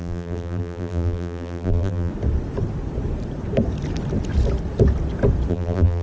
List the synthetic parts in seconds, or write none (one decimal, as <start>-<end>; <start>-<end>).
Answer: 0.0-2.1; 5.5-6.0

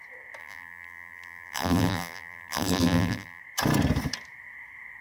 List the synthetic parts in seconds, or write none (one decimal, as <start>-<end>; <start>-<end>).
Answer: 0.4-3.4

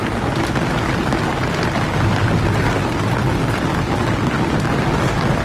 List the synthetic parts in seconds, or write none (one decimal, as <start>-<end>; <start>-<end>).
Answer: none

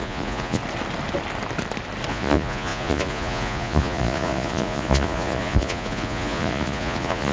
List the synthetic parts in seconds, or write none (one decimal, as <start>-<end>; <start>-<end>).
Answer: 0.0-0.6; 2.1-7.3

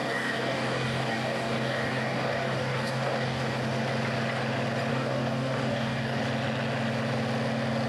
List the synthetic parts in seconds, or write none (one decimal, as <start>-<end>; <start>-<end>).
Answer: 0.0-3.6; 4.9-6.2

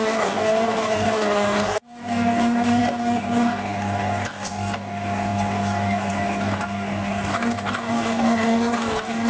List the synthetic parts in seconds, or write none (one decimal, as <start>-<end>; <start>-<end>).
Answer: 0.0-9.3